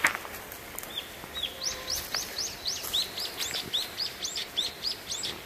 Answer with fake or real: real